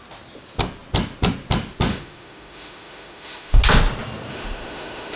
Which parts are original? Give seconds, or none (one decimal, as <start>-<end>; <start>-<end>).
0.0-1.9; 3.6-4.3